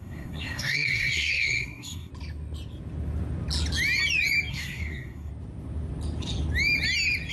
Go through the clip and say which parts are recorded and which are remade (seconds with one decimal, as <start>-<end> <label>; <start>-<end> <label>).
0.0-2.1 remade; 2.1-4.5 recorded; 4.5-5.3 remade; 5.3-7.3 recorded

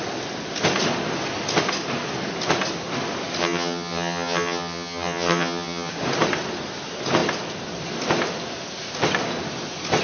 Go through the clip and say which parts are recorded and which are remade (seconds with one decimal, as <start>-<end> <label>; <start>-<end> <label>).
0.0-3.4 recorded; 3.4-5.9 remade; 5.9-10.0 recorded

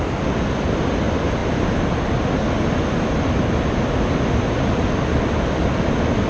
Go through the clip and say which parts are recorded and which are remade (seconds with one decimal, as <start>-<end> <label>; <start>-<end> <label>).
0.0-6.3 recorded